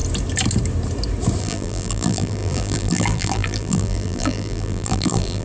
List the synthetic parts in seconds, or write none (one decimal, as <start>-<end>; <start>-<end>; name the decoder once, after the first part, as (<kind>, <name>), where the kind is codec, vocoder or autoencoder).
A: 1.4-5.4 (vocoder, BigVGAN v2)

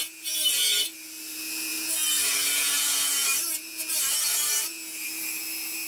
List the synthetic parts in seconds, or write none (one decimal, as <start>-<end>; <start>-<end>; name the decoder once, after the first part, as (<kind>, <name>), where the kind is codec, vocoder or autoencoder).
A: none

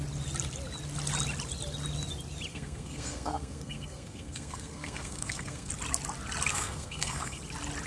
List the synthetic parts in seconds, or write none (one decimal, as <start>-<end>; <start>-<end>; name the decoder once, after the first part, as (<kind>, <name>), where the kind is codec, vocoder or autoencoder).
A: 2.5-5.7 (codec, SNAC); 6.5-7.4